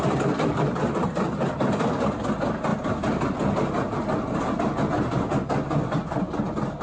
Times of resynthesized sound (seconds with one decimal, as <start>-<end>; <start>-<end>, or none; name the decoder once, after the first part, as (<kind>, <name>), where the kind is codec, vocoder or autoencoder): none